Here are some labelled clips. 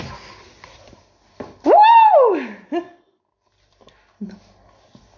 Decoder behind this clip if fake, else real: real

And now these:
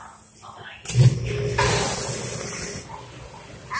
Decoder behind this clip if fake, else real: real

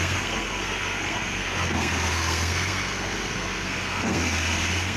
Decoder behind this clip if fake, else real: fake, codec, SNAC